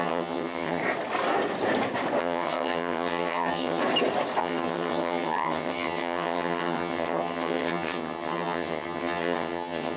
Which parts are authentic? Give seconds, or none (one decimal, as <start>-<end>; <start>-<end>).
0.8-2.2; 3.8-4.4